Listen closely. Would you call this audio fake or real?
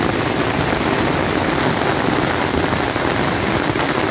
real